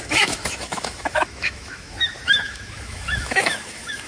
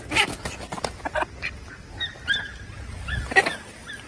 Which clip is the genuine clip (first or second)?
second